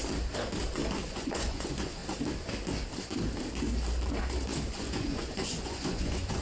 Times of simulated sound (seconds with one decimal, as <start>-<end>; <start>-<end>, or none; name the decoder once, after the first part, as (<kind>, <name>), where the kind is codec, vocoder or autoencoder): 1.1-2.0 (vocoder, Vocos); 4.7-6.4